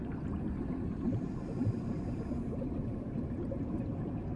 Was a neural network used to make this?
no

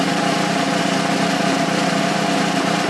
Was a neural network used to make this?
no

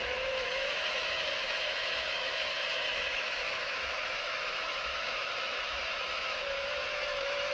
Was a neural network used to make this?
yes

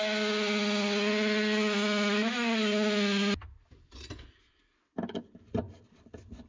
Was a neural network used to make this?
no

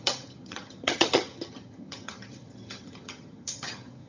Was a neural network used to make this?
yes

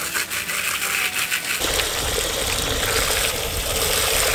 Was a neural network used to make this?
no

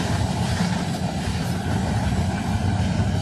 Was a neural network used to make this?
no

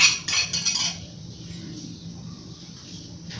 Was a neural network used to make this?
no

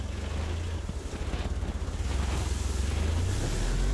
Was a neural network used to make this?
no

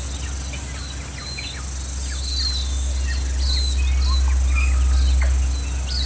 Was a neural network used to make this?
no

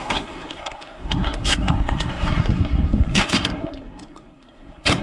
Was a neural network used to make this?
yes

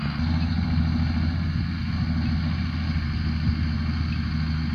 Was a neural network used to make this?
no